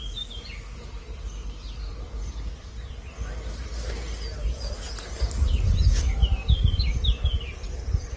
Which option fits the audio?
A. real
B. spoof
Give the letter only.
A